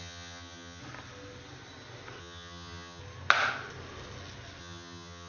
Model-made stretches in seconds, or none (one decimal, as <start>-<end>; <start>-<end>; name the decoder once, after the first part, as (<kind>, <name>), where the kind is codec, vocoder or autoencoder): 0.0-0.8 (vocoder, HiFi-GAN); 2.2-3.0; 4.6-5.3